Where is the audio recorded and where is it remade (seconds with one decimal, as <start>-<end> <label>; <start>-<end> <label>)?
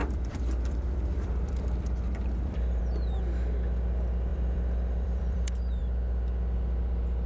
0.0-2.8 remade; 2.8-4.3 recorded; 4.3-5.8 remade; 5.8-7.3 recorded